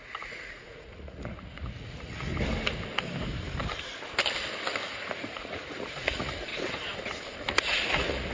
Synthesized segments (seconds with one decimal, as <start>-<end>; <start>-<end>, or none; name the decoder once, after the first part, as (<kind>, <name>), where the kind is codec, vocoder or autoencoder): 0.0-2.3 (vocoder, Vocos); 4.9-6.5; 7.6-8.3